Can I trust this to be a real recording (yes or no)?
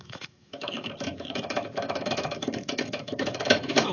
no